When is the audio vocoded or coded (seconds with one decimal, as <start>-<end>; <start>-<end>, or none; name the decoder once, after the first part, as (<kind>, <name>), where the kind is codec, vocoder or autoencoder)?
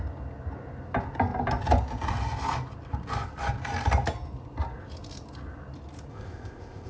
6.1-6.9 (codec, ZipCodec)